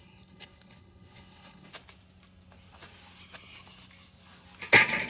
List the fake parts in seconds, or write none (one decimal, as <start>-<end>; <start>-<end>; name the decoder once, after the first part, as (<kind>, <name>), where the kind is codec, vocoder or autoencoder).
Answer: 0.0-1.7 (codec, HILCodec)